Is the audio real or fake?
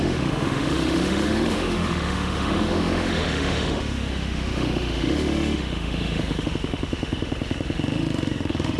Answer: fake